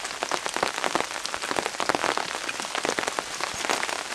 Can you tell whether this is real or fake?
real